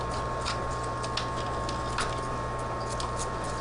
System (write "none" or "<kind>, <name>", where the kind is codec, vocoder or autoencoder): none